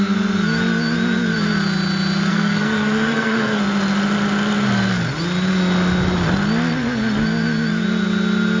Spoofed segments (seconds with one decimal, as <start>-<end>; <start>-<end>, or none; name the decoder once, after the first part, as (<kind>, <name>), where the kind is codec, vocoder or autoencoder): 2.3-3.6 (codec, SNAC)